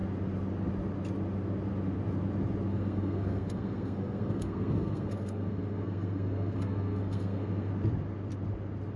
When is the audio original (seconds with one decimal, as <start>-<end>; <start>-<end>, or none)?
0.0-2.7; 7.7-9.0